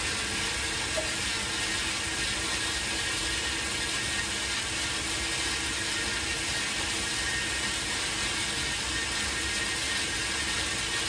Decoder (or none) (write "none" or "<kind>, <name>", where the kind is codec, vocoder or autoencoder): none